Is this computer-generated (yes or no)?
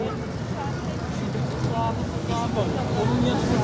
no